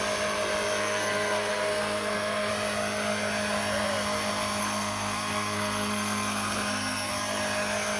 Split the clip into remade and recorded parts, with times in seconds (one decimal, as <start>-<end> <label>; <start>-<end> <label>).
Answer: 0.0-0.8 recorded; 0.8-2.5 remade; 2.5-4.6 recorded; 4.6-7.1 remade; 7.1-8.0 recorded